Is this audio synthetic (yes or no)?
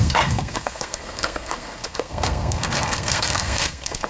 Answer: yes